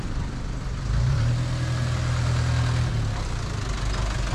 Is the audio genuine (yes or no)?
yes